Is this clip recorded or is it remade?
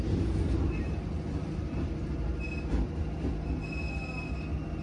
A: recorded